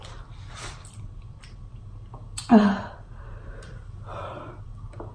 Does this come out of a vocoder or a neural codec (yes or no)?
no